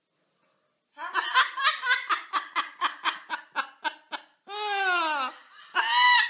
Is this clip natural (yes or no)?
yes